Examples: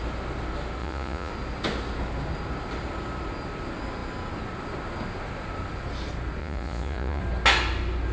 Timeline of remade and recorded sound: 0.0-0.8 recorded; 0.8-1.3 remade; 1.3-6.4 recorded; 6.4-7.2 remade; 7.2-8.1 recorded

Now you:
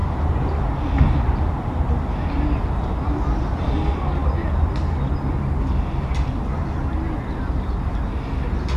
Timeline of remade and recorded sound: 0.0-8.8 recorded

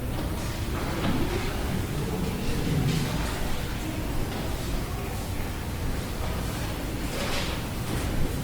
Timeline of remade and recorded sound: 0.0-1.3 recorded; 1.3-2.1 remade; 2.1-8.4 recorded

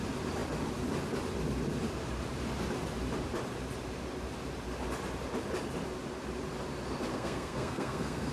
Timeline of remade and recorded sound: 0.0-7.1 recorded; 7.1-8.3 remade

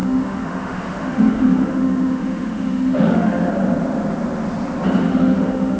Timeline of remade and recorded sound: 0.0-3.5 remade; 3.5-5.0 recorded; 5.0-5.8 remade

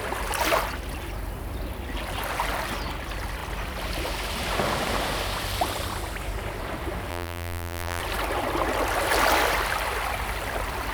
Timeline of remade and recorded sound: 0.0-7.1 recorded; 7.1-8.0 remade; 8.0-10.9 recorded

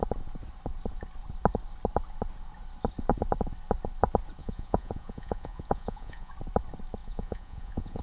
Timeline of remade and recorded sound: 0.0-4.4 recorded; 4.4-6.3 remade; 6.3-7.0 recorded; 7.0-8.0 remade